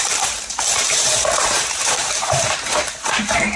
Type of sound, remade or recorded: remade